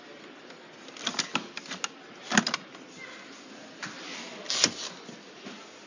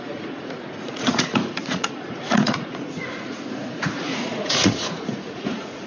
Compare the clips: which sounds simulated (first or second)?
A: second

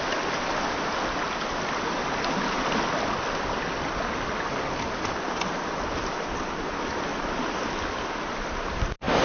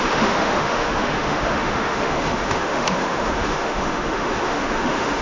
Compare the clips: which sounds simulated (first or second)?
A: second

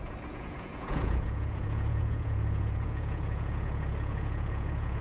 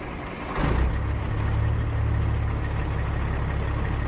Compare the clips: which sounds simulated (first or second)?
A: first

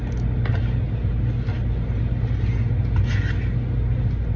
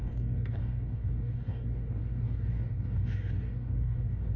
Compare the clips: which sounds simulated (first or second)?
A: second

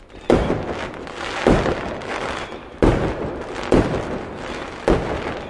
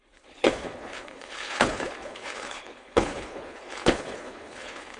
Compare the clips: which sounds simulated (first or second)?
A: second